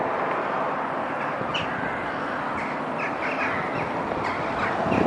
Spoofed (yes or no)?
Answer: no